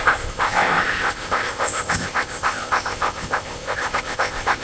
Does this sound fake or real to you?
fake